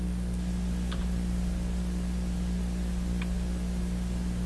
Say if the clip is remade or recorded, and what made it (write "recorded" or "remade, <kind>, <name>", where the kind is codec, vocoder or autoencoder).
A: recorded